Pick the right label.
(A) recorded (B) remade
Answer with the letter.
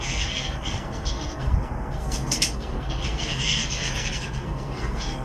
B